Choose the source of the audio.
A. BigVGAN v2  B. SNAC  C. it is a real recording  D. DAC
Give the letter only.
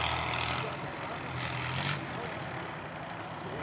C